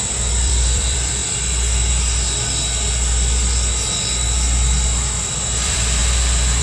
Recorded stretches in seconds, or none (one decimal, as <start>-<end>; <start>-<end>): 1.2-5.2; 6.0-6.6